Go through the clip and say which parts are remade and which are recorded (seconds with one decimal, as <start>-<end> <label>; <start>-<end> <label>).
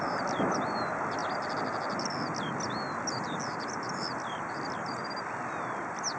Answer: 0.0-6.2 recorded